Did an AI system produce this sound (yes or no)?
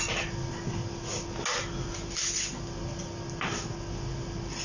no